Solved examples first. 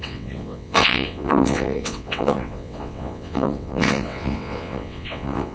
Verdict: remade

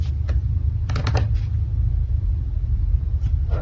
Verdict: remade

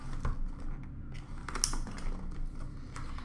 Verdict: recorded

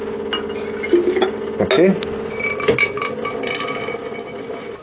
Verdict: recorded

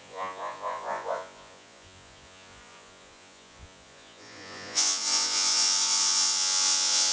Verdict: remade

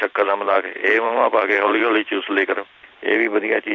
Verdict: remade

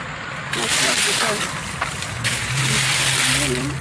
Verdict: remade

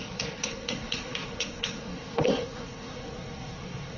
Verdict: remade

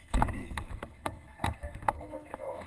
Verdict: remade